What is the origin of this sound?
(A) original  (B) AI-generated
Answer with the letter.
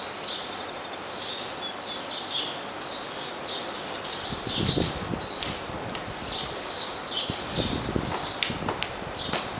A